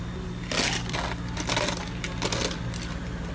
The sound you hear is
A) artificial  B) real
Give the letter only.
B